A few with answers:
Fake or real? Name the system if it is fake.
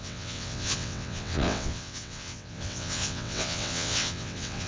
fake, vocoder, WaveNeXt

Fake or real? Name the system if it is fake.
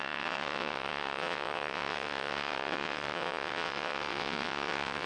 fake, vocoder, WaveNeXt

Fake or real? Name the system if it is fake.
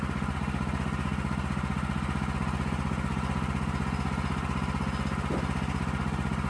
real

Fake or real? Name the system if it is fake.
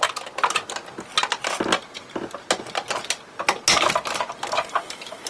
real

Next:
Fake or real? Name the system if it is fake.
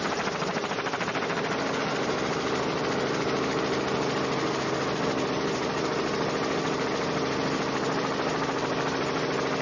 real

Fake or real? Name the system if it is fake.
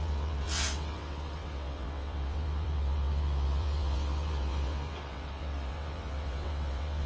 fake, vocoder, WaveNeXt